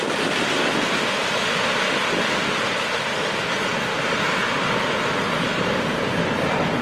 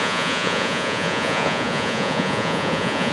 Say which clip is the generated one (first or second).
second